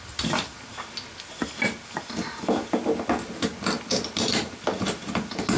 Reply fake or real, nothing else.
real